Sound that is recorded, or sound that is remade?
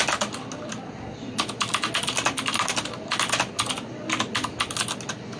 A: recorded